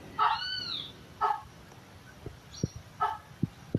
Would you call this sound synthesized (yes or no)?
no